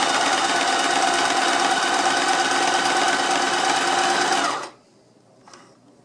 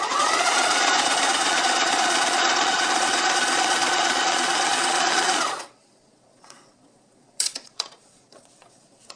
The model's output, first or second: second